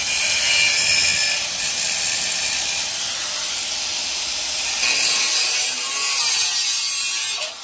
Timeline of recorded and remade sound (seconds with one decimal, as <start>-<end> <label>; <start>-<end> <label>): 0.0-4.0 recorded; 4.0-4.7 remade; 4.7-7.6 recorded